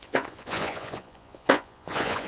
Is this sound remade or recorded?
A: remade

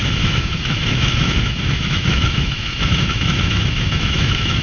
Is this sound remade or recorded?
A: remade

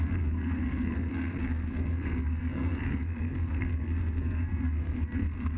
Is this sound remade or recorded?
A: remade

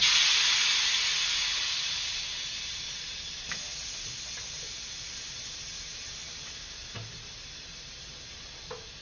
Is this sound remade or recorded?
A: recorded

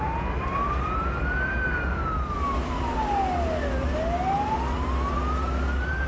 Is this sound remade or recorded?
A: recorded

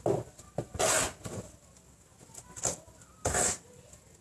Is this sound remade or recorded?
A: recorded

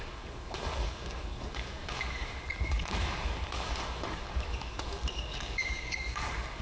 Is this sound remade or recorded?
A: remade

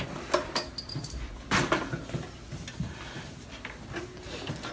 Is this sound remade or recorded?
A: recorded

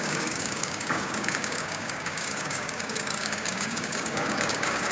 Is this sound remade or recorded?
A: remade